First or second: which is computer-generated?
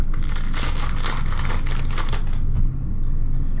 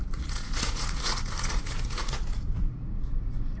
second